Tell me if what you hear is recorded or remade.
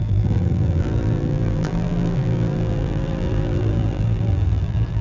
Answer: remade